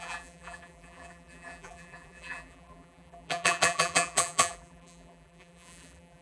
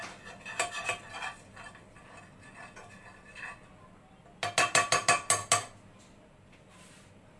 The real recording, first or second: second